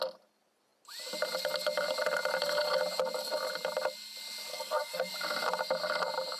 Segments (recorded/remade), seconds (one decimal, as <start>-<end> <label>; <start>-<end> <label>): 0.0-4.5 recorded; 4.5-5.1 remade; 5.1-6.4 recorded